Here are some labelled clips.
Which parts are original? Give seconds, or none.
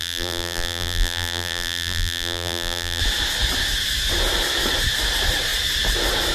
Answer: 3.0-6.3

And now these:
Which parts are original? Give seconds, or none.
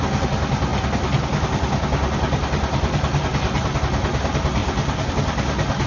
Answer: 0.0-5.9